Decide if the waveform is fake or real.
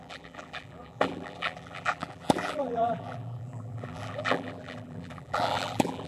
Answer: fake